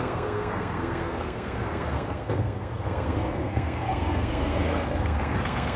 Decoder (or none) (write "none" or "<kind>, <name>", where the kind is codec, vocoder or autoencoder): codec, SNAC